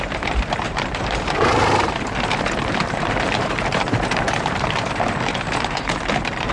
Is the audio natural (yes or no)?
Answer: no